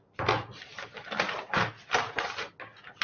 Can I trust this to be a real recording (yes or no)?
yes